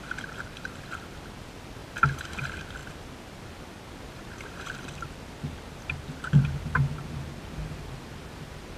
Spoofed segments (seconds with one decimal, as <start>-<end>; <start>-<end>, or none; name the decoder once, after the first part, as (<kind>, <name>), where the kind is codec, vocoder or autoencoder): none